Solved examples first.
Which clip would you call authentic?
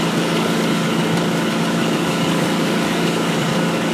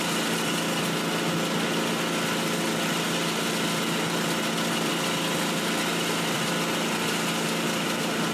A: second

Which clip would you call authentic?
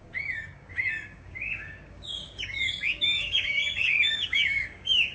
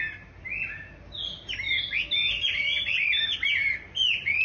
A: second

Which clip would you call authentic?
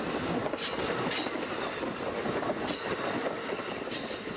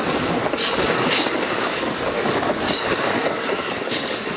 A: first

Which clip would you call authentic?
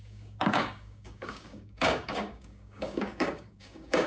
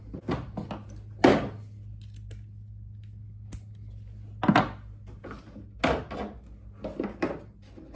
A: second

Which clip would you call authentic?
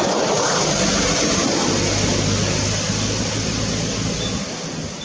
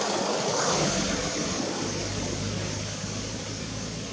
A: first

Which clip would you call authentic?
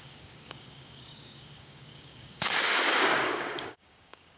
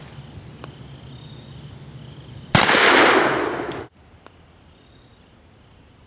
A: second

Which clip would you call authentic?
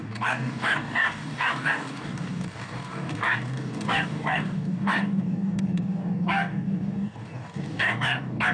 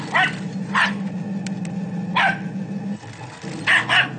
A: second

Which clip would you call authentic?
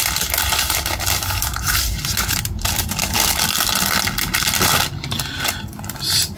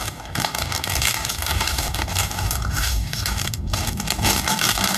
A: first